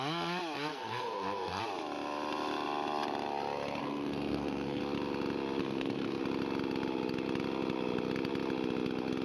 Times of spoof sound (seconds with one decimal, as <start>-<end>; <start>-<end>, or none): 0.7-1.6; 3.8-4.8; 5.6-6.2